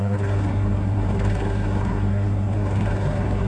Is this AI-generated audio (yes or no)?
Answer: yes